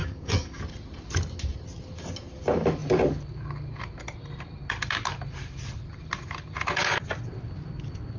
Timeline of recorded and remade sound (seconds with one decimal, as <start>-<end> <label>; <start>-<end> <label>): 0.0-0.6 remade; 0.6-8.2 recorded